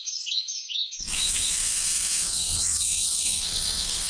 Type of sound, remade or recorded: remade